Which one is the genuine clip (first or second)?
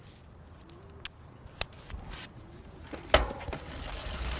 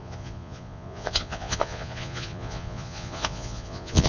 first